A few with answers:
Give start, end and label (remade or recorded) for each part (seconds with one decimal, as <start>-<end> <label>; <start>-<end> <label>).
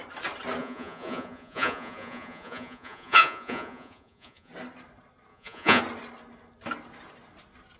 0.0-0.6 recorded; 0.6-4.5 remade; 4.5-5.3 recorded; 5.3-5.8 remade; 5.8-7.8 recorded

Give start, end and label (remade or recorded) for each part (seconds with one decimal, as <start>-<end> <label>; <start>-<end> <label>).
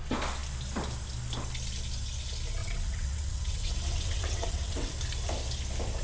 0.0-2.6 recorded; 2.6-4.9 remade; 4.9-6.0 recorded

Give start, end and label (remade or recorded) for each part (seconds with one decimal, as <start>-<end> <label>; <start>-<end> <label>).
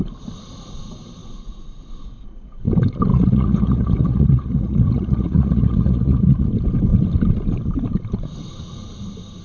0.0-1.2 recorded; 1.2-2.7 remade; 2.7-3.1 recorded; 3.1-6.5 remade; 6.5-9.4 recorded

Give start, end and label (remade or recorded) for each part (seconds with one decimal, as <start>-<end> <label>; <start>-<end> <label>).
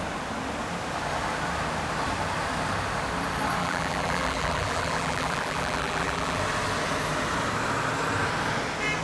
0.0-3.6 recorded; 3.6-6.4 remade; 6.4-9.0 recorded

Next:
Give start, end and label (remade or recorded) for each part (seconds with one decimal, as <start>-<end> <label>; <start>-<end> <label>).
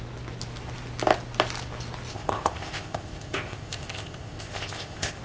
0.0-2.1 recorded; 2.1-5.2 remade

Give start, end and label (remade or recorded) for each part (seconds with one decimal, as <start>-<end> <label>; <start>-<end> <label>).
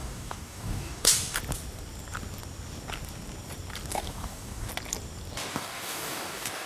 0.0-1.4 remade; 1.4-3.9 recorded; 3.9-4.7 remade; 4.7-5.5 recorded; 5.5-6.7 remade